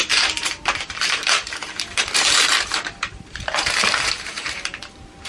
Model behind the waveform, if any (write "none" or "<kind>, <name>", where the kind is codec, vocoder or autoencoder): vocoder, BigVGAN v2